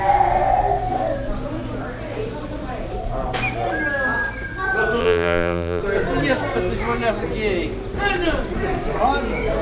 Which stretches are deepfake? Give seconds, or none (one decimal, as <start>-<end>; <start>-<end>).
5.0-5.8